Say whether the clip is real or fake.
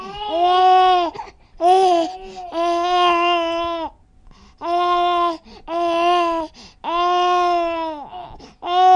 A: real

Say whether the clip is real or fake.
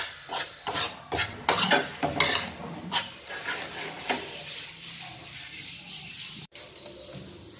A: real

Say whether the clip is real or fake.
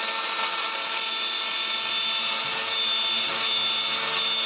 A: real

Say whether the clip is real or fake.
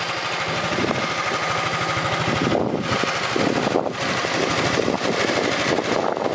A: real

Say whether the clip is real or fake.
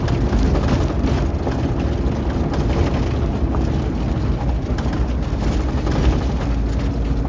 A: real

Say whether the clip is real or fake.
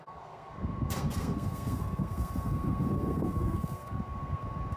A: fake